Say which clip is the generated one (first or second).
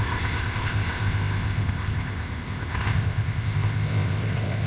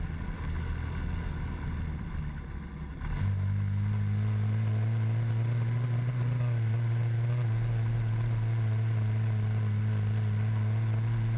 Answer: first